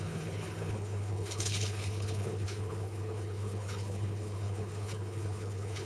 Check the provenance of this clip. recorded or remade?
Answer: remade